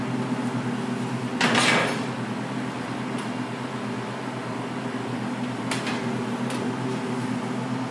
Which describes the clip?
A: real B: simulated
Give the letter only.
A